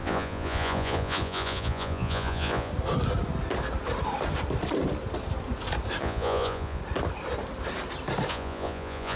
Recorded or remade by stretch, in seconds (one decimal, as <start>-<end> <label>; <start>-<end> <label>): 0.0-2.7 remade; 2.7-6.0 recorded; 6.0-6.8 remade; 6.8-8.3 recorded; 8.3-9.2 remade